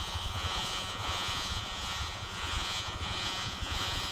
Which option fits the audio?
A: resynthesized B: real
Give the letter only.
A